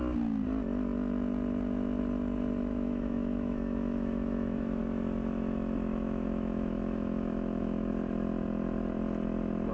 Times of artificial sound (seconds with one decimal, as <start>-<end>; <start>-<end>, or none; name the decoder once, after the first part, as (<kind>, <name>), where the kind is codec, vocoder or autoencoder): 2.7-4.8 (autoencoder, DAC-VAE); 5.9-7.9